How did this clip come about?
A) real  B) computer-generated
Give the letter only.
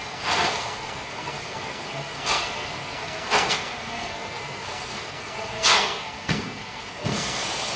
B